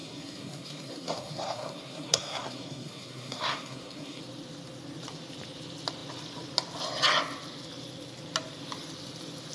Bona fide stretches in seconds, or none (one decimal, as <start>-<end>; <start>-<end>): 4.2-9.5